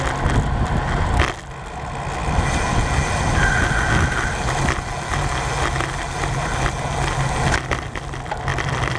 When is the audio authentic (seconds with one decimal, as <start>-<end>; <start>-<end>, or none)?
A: 0.0-8.5

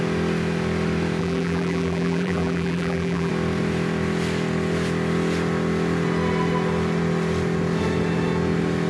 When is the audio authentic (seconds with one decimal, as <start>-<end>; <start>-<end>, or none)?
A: 0.0-1.2; 3.3-8.9